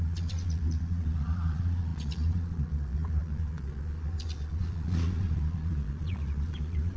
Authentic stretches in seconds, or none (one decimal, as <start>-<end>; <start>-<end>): none